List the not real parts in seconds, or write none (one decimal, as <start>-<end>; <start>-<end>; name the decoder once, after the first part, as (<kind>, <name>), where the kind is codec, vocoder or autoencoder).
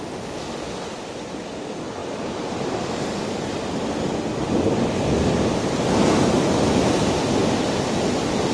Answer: none